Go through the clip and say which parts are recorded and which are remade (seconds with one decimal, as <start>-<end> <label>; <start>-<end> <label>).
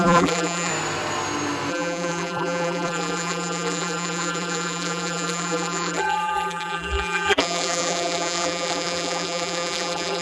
0.0-0.7 remade; 0.7-1.7 recorded; 1.7-10.2 remade